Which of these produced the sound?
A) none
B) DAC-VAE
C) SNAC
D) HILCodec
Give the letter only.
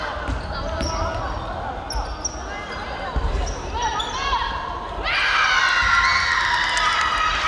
A